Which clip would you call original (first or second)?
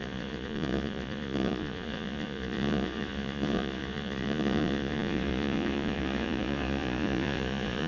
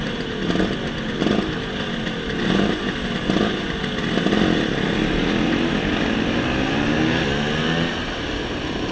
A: second